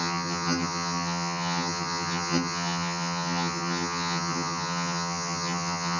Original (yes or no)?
no